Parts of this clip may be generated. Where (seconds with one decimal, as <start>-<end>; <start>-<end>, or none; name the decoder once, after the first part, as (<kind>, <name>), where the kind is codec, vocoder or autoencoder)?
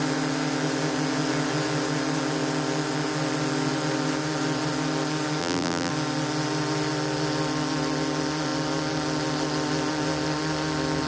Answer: 5.4-5.9 (vocoder, BigVGAN v2)